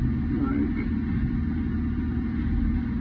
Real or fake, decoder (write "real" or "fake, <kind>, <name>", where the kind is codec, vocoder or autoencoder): real